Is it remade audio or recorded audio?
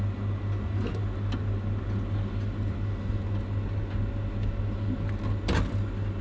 recorded